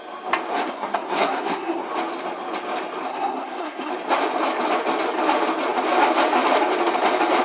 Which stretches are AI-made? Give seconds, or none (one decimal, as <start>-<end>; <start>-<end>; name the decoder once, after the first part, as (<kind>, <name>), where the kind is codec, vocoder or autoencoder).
0.5-1.9 (codec, SNAC); 3.1-3.9